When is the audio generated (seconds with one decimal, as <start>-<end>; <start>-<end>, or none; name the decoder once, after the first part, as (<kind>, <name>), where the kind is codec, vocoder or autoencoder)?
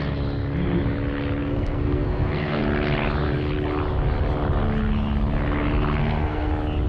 1.4-2.6 (codec, SNAC); 6.0-6.5